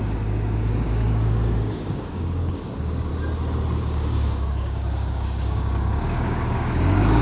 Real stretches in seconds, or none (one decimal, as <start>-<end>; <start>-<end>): 3.1-3.8